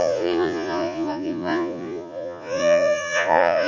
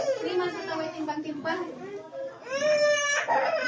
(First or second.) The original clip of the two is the second